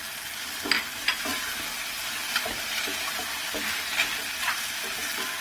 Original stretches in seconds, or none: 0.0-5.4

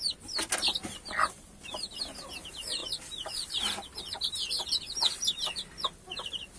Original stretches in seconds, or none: 0.0-6.6

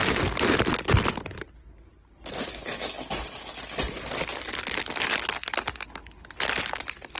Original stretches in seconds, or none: 0.0-7.2